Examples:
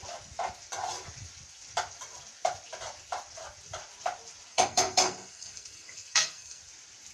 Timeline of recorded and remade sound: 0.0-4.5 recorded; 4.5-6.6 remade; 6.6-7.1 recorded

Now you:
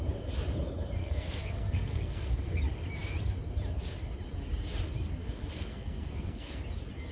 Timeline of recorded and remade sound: 0.0-1.0 recorded; 1.0-2.6 remade; 2.6-5.2 recorded; 5.2-6.6 remade; 6.6-7.1 recorded

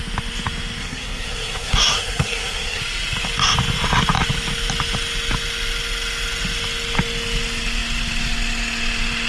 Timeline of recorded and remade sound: 0.0-0.8 recorded; 0.8-2.8 remade; 2.8-9.3 recorded

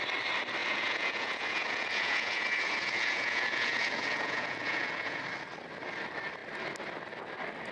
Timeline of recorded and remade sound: 0.0-0.6 recorded; 0.6-5.2 remade; 5.2-7.7 recorded

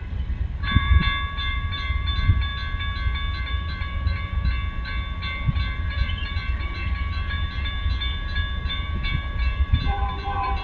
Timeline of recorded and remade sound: 0.0-1.0 remade; 1.0-1.5 recorded; 1.5-2.5 remade; 2.5-3.4 recorded; 3.4-4.6 remade; 4.6-5.5 recorded; 5.5-7.8 remade; 7.8-8.6 recorded; 8.6-10.6 remade

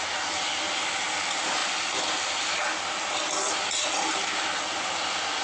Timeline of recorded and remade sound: 0.0-5.4 recorded

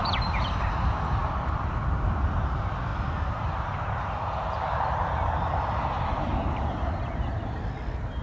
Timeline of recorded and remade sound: 0.0-0.6 remade; 0.6-8.2 recorded

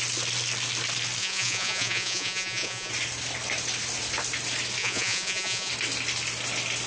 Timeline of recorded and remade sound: 0.0-1.2 recorded; 1.2-2.9 remade; 2.9-4.8 recorded; 4.8-5.7 remade; 5.7-6.9 recorded